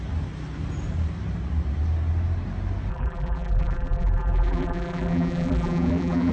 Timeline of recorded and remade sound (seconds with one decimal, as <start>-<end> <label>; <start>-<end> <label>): 0.0-2.9 recorded; 2.9-6.3 remade